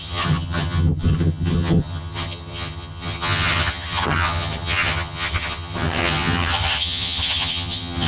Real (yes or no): no